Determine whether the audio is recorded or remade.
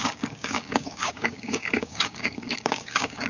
remade